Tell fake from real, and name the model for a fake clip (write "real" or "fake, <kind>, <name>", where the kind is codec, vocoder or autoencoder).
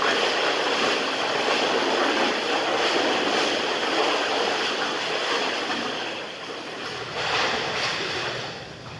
real